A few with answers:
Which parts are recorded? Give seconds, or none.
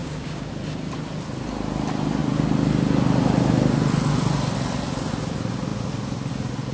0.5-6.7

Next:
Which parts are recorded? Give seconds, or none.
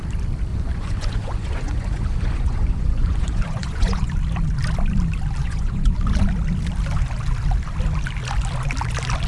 0.0-0.5; 4.1-5.4; 6.0-9.3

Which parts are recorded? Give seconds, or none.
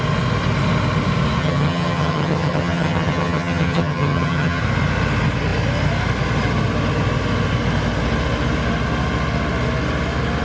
0.0-1.4; 4.6-10.4